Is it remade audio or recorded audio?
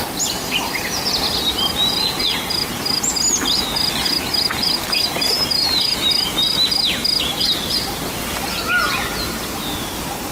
recorded